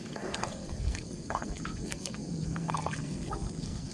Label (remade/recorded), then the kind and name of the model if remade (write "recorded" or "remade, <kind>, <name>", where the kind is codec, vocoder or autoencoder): remade, codec, SNAC